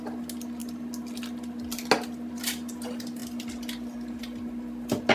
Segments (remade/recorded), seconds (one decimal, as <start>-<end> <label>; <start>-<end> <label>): 0.0-5.1 recorded